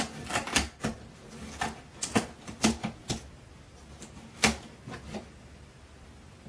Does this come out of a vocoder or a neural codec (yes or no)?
no